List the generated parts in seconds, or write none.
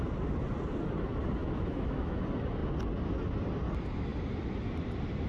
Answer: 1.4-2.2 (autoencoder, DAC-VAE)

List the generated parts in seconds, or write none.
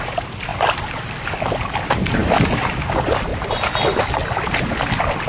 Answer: 3.3-4.0 (vocoder, BigVGAN v2)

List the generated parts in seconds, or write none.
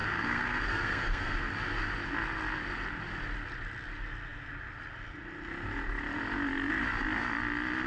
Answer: 0.0-1.5 (codec, SNAC)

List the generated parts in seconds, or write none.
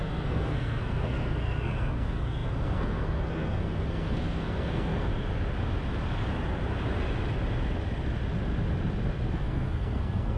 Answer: 0.0-5.1 (codec, SNAC); 9.3-10.4